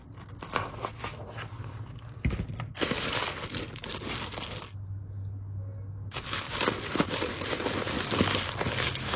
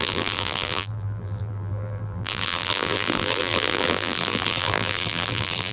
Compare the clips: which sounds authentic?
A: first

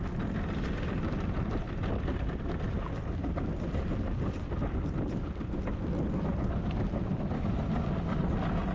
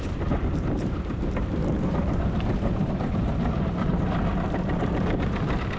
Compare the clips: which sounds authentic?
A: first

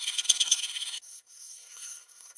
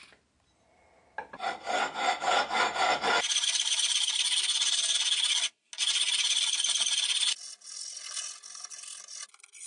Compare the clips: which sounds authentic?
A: second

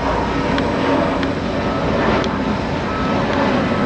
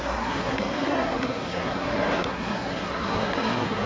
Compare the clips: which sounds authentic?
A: first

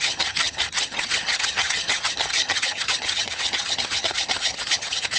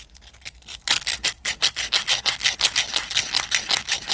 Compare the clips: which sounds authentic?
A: second